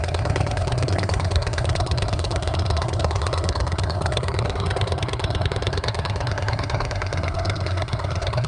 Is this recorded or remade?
remade